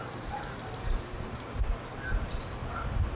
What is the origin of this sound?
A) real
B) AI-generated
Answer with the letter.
A